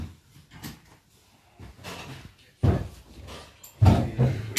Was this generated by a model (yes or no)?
no